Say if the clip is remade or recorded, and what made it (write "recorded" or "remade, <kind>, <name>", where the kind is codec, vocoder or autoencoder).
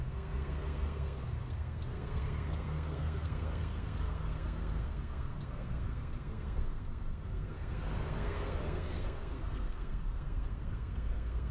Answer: remade, codec, SNAC